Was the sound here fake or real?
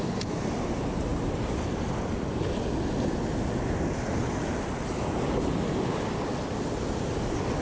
real